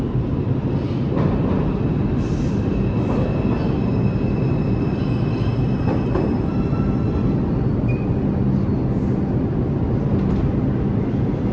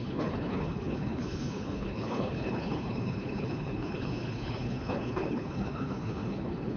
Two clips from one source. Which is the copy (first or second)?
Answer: second